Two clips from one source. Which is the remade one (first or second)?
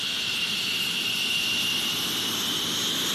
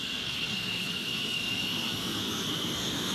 second